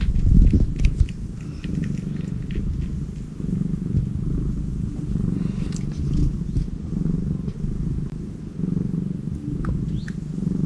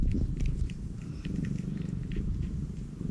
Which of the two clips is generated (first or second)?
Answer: second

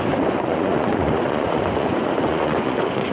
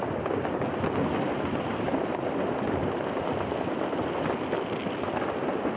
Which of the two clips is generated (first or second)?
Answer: first